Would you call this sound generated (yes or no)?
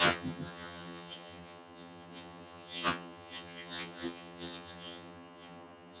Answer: yes